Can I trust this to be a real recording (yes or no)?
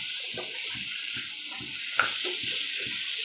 yes